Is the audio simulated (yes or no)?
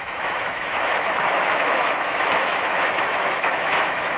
yes